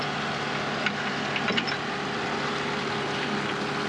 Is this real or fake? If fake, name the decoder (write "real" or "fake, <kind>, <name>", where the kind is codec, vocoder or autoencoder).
real